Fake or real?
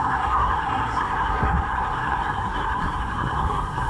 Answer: fake